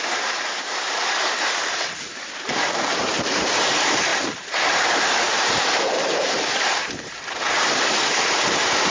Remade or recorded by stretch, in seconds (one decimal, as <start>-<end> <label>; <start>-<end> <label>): 0.0-8.9 remade